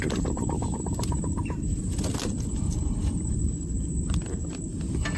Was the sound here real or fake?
real